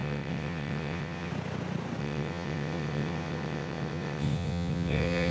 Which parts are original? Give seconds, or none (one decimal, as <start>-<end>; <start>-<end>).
1.3-2.0